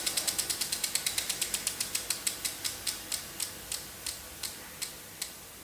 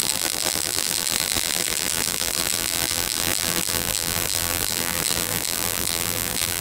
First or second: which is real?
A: first